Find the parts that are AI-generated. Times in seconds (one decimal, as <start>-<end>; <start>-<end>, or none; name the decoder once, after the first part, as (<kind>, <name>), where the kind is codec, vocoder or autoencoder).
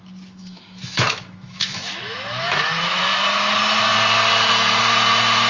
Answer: 0.4-3.0 (autoencoder, DAC-VAE)